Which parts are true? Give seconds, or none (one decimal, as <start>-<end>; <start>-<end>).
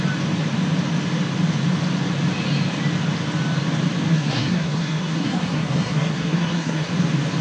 0.0-4.1; 6.9-7.4